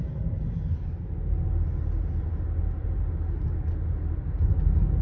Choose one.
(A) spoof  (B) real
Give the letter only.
B